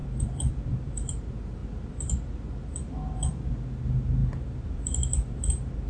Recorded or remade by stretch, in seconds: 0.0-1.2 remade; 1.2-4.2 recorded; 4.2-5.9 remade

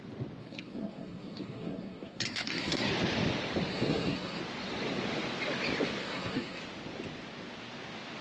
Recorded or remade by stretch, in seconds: 0.0-0.4 recorded; 0.4-2.9 remade; 2.9-3.7 recorded; 3.7-4.4 remade; 4.4-6.0 recorded; 6.0-6.6 remade; 6.6-8.2 recorded

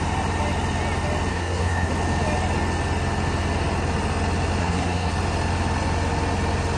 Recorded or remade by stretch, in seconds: 0.0-1.3 recorded; 1.3-1.9 remade; 1.9-4.6 recorded; 4.6-5.1 remade; 5.1-6.8 recorded

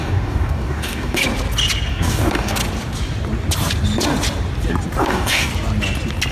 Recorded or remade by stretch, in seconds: 0.0-1.2 remade; 1.2-1.9 recorded; 1.9-2.6 remade; 2.6-5.0 recorded; 5.0-5.5 remade; 5.5-6.3 recorded

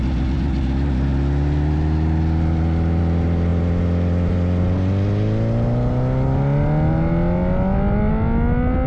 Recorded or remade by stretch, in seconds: 0.0-8.9 recorded